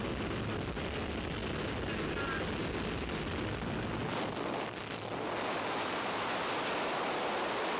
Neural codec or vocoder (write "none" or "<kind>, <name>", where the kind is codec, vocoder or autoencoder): none